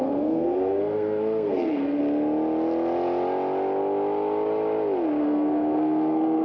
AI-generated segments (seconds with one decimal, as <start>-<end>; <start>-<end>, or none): 0.0-2.0; 5.2-6.4